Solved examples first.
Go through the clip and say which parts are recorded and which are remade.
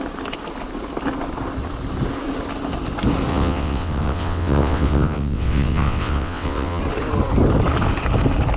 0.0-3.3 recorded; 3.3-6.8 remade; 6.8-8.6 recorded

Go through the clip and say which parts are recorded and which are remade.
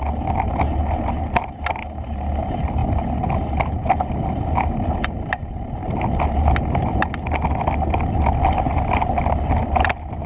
0.0-10.3 recorded